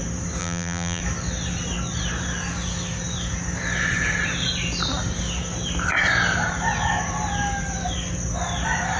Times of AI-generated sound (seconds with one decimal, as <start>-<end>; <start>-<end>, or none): 0.4-1.0